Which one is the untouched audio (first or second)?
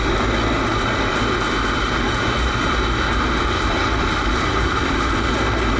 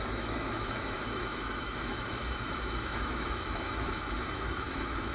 first